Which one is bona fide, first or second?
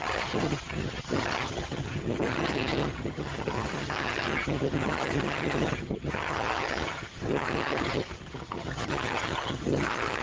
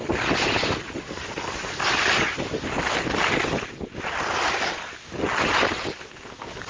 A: second